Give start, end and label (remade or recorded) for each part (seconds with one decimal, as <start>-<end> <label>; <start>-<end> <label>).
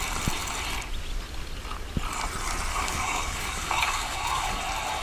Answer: 0.0-2.7 recorded; 2.7-4.6 remade; 4.6-5.0 recorded